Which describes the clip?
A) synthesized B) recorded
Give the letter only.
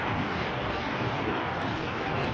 A